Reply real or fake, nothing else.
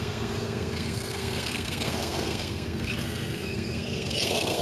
fake